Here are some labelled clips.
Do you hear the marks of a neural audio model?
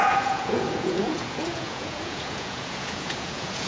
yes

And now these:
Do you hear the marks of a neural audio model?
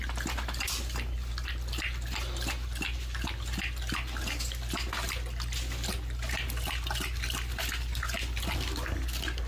no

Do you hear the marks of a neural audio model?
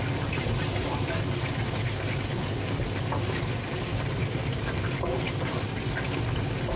no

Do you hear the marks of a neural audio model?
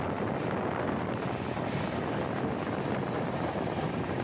no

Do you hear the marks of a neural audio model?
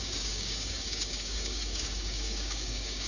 yes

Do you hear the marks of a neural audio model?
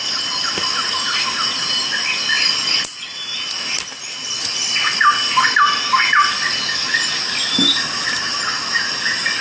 no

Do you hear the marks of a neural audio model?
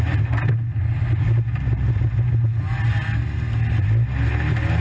no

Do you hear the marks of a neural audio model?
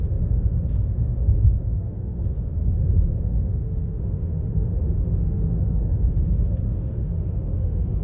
yes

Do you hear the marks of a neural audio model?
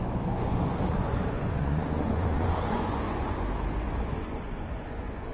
yes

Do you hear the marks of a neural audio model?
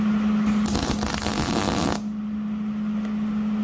no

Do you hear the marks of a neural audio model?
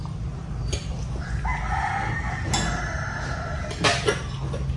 no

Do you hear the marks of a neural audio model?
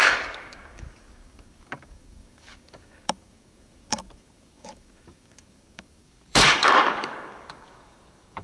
yes